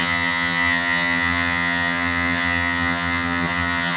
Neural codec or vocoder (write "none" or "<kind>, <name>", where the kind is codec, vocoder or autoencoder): vocoder, HiFi-GAN